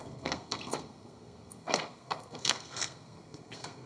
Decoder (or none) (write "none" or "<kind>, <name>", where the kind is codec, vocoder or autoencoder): codec, SNAC